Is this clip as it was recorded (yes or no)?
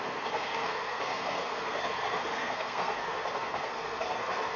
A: no